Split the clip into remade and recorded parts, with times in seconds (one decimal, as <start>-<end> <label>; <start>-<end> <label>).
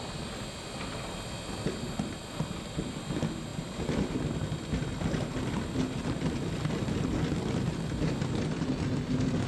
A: 0.0-9.5 recorded